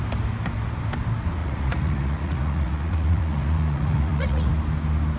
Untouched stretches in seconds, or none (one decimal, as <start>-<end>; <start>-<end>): 0.0-1.4; 4.5-5.2